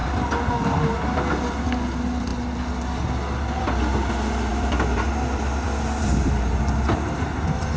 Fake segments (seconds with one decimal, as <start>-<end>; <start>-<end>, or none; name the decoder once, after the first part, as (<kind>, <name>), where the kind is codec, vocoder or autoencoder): none